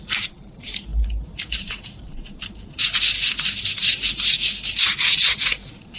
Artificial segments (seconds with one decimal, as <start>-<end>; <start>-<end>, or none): none